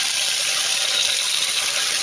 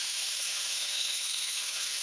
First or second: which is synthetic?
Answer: second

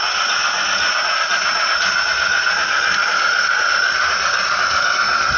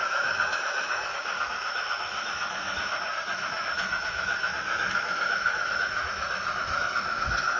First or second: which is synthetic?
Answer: second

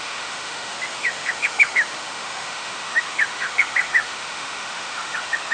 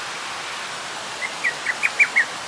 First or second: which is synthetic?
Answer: first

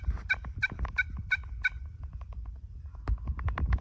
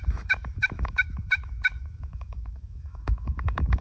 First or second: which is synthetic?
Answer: second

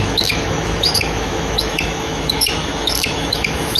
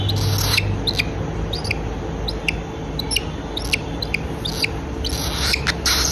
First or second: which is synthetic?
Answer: first